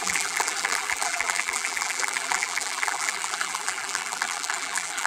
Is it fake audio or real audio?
fake